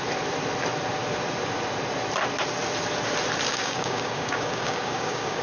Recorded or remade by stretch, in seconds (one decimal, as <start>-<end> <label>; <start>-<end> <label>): 0.0-3.5 recorded; 3.5-5.4 remade